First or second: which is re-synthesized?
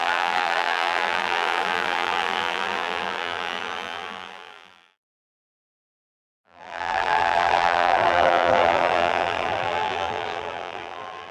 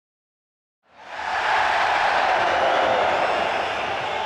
first